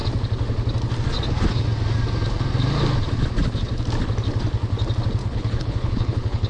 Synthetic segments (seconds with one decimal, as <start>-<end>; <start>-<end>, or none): 5.2-6.5